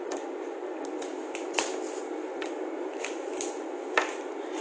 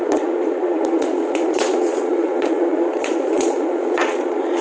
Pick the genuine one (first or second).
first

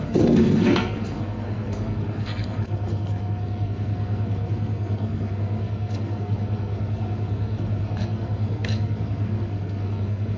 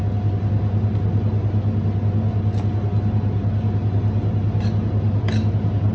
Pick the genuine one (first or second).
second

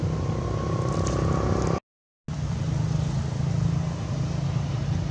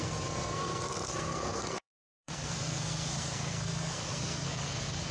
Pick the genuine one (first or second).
first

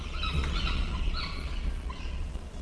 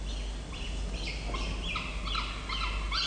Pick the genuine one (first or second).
second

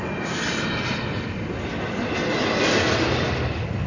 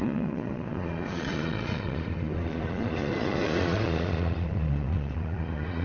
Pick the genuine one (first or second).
first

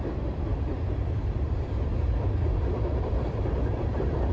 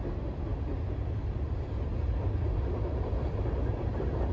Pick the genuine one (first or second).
second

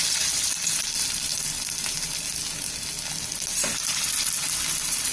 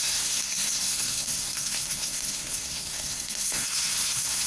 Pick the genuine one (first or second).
first